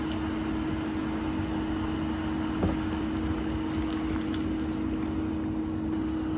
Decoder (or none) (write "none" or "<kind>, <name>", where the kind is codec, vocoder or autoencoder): none